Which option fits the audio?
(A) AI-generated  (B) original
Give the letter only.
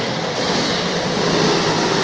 A